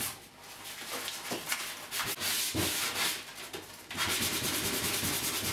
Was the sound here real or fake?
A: real